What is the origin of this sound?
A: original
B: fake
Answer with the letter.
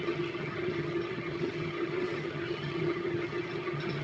B